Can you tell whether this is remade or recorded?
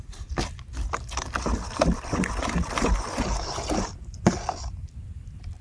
recorded